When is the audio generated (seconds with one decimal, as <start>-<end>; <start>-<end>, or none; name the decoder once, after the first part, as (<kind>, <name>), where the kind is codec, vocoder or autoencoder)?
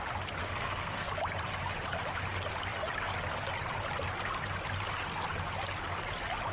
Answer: 0.4-1.1 (codec, SNAC)